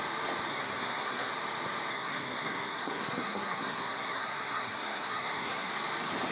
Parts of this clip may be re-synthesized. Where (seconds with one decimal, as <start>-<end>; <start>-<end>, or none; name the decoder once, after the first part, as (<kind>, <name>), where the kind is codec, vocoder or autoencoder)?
0.5-1.3 (codec, SNAC); 1.9-5.7